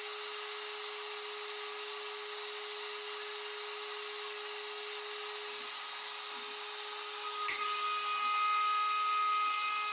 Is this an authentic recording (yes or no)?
yes